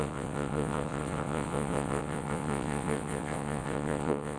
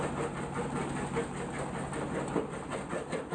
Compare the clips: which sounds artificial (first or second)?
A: first